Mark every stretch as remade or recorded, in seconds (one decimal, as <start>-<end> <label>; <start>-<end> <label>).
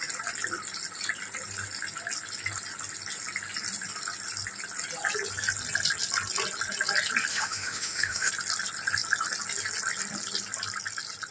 0.0-7.3 recorded; 7.3-8.3 remade; 8.3-11.3 recorded